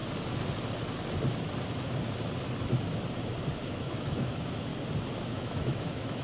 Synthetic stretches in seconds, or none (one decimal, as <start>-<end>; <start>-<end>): 3.7-4.7; 5.2-6.2